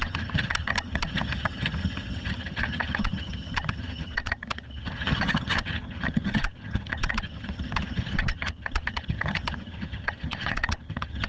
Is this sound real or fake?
fake